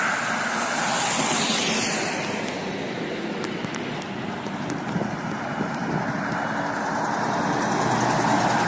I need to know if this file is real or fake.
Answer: real